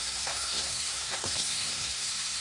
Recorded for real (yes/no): no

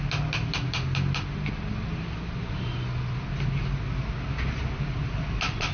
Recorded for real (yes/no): yes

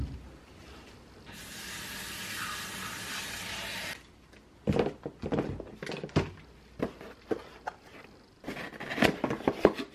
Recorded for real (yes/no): yes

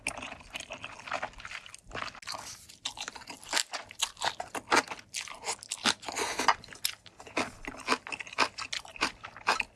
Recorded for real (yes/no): yes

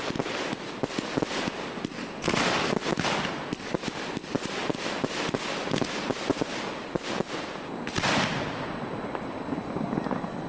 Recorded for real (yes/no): yes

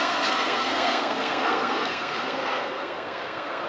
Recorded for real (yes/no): no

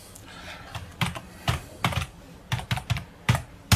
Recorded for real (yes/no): yes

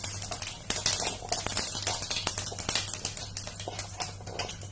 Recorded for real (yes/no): yes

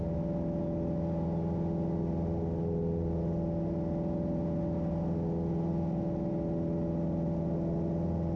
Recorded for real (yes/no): yes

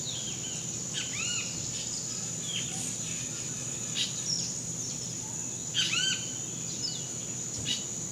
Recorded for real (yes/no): yes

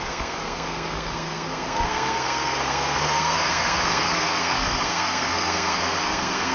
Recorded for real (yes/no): no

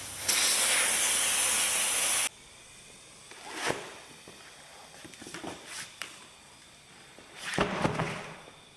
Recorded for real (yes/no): yes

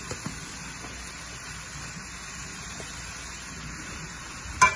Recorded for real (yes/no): yes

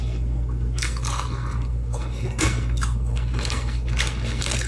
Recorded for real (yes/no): no